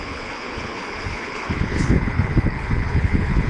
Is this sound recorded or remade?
remade